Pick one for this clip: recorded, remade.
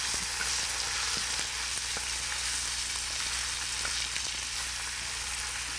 recorded